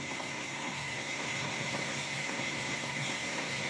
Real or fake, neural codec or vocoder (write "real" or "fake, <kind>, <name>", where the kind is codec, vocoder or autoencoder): fake, codec, SNAC